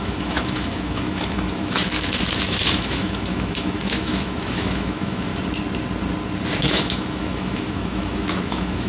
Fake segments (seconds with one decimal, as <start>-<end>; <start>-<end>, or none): 0.0-5.3; 6.6-8.9